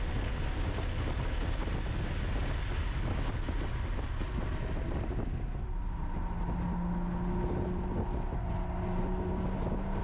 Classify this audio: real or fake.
real